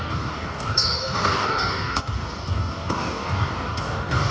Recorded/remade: remade